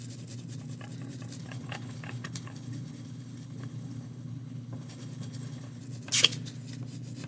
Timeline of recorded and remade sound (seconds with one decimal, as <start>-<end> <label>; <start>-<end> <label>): 0.0-1.4 recorded; 1.4-5.8 remade; 5.8-7.3 recorded